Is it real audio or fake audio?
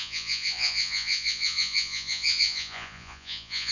fake